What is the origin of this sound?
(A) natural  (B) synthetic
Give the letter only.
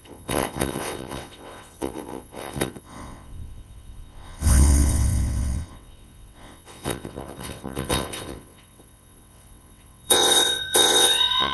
B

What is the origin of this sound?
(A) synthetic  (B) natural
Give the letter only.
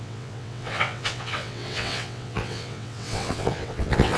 A